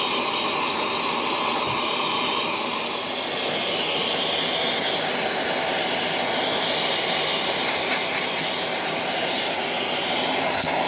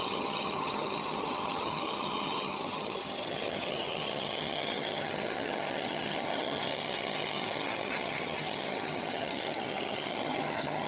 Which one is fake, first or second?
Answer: second